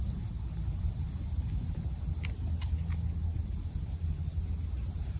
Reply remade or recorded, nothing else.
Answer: recorded